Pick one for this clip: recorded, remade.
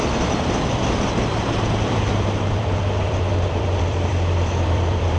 remade